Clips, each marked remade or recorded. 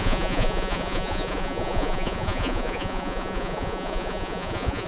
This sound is remade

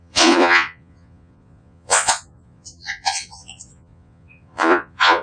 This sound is remade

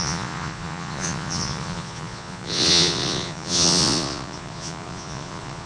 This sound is remade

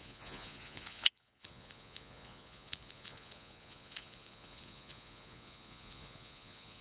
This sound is remade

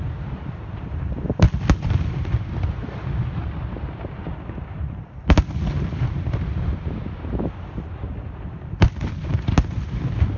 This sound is recorded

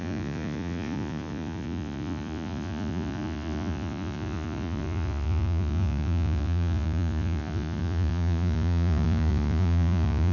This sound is remade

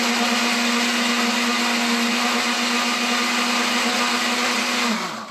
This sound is recorded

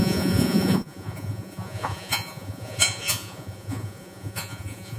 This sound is remade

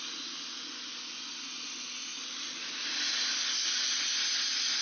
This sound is recorded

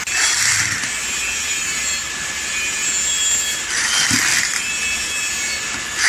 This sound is recorded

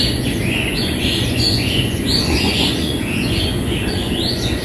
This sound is remade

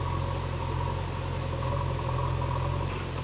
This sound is recorded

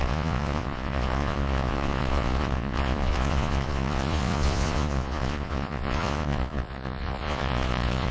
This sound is remade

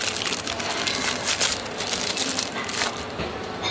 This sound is recorded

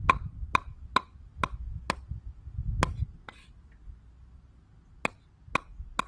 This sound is recorded